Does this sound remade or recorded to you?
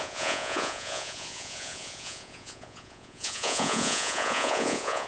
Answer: remade